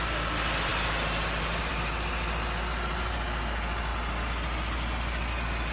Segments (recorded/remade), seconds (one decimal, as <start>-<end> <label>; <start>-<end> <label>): 0.0-5.7 recorded